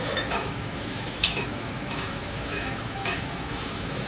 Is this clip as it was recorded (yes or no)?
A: no